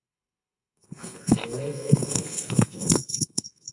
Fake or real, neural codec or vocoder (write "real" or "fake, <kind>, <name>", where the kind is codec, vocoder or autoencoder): fake, codec, SNAC